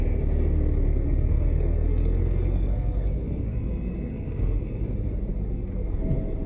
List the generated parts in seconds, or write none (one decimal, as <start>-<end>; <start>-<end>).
0.9-4.8; 5.3-6.0